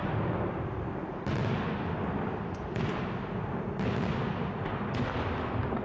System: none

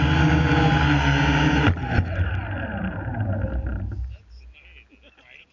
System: none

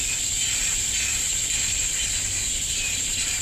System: vocoder, BigVGAN v2